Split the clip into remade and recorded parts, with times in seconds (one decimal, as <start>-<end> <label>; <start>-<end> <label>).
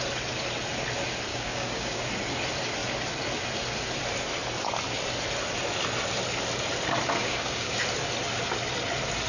0.0-1.3 recorded; 1.3-2.1 remade; 2.1-7.2 recorded; 7.2-7.8 remade; 7.8-9.3 recorded